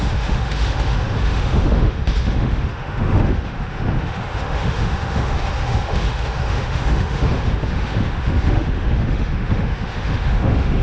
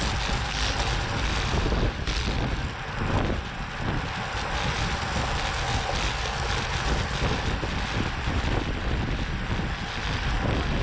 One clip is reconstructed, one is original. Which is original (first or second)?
second